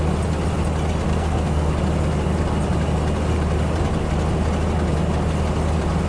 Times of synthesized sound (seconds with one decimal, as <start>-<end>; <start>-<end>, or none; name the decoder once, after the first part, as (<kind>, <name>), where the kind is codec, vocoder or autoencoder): 1.1-1.7 (codec, SNAC)